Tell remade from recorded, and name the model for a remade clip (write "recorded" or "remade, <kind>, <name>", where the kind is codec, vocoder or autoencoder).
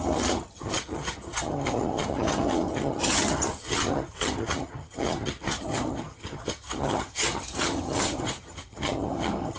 remade, vocoder, HiFi-GAN